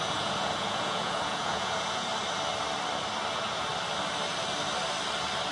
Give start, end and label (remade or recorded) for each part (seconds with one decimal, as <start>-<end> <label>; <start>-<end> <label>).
0.0-2.1 remade; 2.1-3.3 recorded; 3.3-3.7 remade; 3.7-5.5 recorded